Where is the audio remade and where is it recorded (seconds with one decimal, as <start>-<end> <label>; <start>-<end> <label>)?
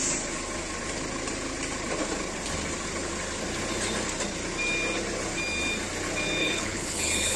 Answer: 0.0-6.4 recorded; 6.4-7.4 remade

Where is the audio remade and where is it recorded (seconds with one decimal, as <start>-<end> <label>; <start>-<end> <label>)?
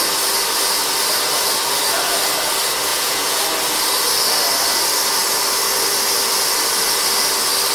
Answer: 0.0-2.9 recorded; 2.9-3.4 remade; 3.4-7.7 recorded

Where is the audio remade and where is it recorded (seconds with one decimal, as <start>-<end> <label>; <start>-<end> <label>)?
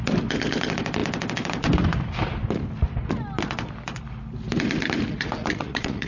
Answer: 0.0-5.4 recorded; 5.4-6.1 remade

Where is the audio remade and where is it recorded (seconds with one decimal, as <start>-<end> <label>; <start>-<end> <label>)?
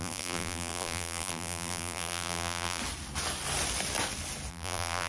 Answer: 0.0-2.8 remade; 2.8-4.5 recorded; 4.5-5.1 remade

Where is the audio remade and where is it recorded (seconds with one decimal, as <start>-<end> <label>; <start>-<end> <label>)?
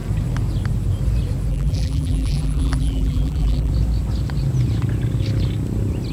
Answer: 0.0-1.5 recorded; 1.5-3.7 remade; 3.7-6.1 recorded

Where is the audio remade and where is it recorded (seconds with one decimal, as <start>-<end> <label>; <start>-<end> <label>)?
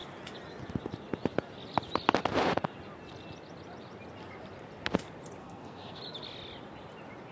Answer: 0.0-5.4 recorded; 5.4-6.0 remade; 6.0-7.3 recorded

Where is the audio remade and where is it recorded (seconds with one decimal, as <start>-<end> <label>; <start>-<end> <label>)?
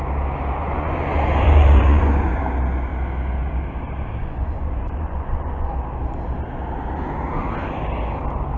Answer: 0.0-0.6 recorded; 0.6-2.4 remade; 2.4-4.2 recorded; 4.2-5.7 remade; 5.7-8.6 recorded